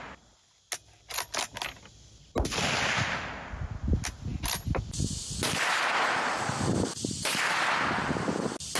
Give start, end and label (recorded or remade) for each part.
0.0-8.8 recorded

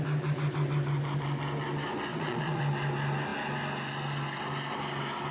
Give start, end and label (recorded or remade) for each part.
0.0-2.1 recorded; 2.1-2.6 remade; 2.6-5.3 recorded

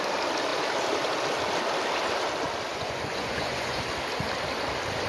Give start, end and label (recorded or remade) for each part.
0.0-2.7 recorded; 2.7-3.8 remade; 3.8-5.1 recorded

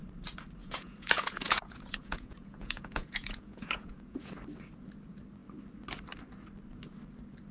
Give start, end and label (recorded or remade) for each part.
0.0-0.6 recorded; 0.6-4.3 remade; 4.3-7.5 recorded